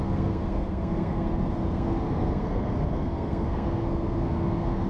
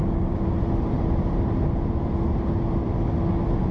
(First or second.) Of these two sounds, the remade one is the first